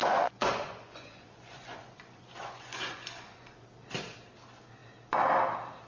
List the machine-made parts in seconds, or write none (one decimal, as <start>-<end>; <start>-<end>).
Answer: 0.0-3.5